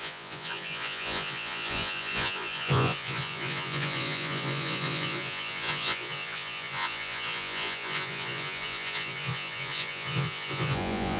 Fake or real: fake